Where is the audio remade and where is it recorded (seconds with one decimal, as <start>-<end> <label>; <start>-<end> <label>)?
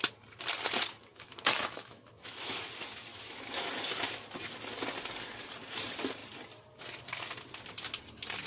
0.0-1.1 recorded; 1.1-2.6 remade; 2.6-3.1 recorded; 3.1-3.7 remade; 3.7-8.5 recorded